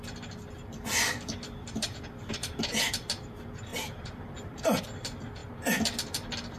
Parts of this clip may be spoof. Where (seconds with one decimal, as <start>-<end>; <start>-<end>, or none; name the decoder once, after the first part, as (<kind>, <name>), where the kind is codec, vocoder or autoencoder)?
1.6-2.9 (vocoder, BigVGAN v2); 3.7-4.8